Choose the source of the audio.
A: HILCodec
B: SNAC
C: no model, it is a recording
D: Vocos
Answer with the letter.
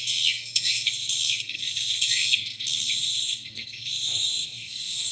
B